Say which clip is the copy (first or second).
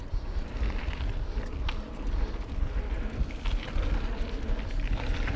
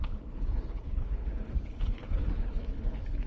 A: second